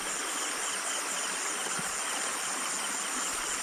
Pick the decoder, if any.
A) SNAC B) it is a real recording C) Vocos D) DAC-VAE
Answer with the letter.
B